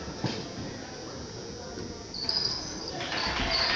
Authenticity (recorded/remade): recorded